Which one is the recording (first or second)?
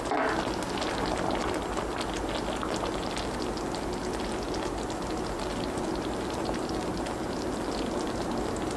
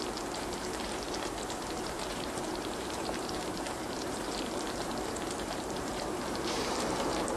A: first